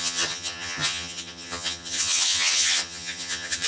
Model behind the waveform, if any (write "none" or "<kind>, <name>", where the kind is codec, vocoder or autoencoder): vocoder, HiFi-GAN